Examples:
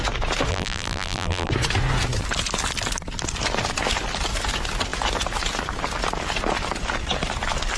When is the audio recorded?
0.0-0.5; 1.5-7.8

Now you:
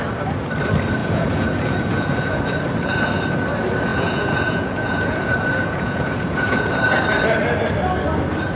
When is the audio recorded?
0.0-1.0; 2.4-3.9; 6.7-8.6

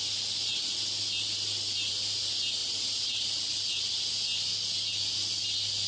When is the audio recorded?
0.0-2.6; 3.9-5.9

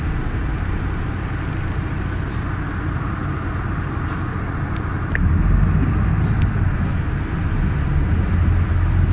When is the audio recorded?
0.0-0.4; 1.1-9.1